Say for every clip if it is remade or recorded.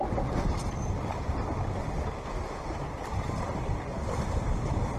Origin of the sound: recorded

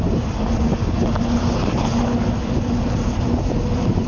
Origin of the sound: recorded